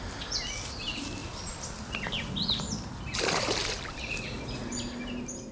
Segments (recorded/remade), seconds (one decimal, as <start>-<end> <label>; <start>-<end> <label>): 0.0-5.5 recorded